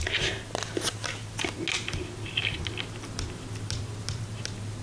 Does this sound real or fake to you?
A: real